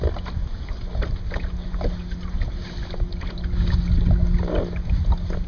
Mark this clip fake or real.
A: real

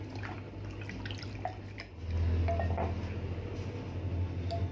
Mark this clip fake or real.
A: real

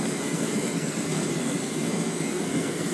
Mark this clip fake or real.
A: fake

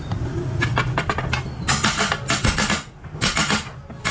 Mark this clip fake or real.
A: real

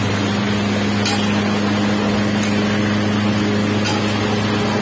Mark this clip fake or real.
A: real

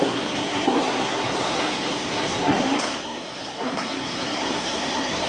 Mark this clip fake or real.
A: fake